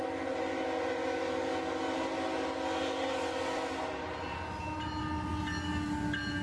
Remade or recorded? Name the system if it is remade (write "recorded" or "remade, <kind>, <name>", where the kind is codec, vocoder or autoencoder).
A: recorded